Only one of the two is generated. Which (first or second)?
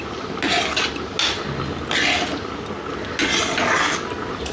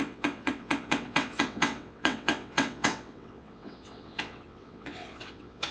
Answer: second